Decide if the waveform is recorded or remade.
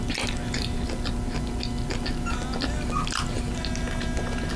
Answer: recorded